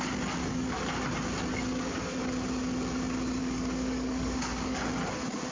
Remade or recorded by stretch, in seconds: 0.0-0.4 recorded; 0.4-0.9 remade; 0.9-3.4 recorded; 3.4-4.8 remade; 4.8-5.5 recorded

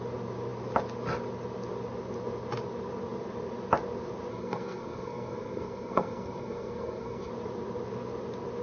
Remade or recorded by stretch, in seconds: 0.0-4.3 recorded; 4.3-7.3 remade; 7.3-8.6 recorded